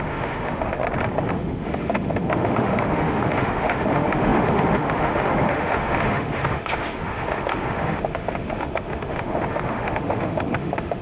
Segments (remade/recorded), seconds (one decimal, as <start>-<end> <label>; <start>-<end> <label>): 0.0-0.8 remade; 0.8-1.3 recorded; 1.3-11.0 remade